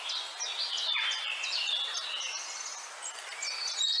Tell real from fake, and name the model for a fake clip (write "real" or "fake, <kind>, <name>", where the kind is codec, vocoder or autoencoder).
real